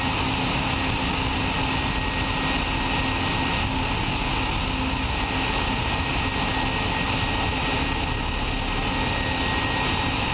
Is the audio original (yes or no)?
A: yes